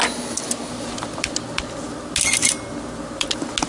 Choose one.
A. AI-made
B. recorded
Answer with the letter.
B